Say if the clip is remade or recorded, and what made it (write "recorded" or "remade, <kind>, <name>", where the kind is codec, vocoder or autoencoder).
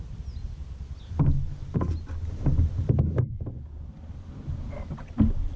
recorded